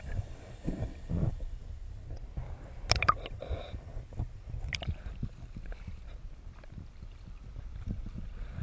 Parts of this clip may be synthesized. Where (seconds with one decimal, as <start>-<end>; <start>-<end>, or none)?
0.0-1.6; 6.2-8.6